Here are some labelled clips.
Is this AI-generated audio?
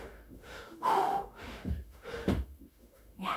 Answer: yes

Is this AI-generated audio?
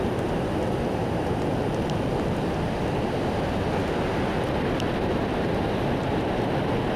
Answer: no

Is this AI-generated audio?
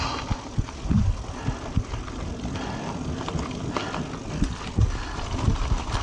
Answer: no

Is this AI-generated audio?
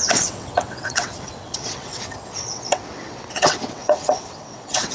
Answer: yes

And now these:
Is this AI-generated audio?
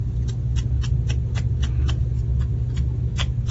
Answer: no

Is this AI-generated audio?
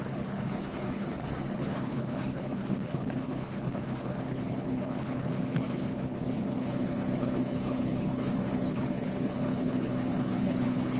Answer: yes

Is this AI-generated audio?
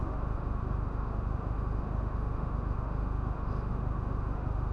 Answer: yes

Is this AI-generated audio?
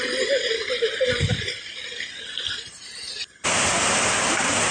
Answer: no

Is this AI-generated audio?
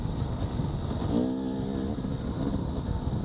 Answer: no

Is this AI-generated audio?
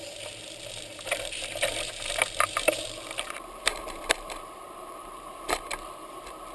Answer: yes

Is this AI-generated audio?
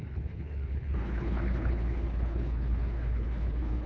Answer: yes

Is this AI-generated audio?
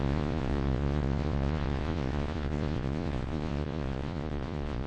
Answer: yes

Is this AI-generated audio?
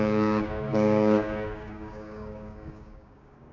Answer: yes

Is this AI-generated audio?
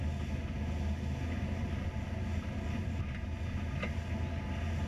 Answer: no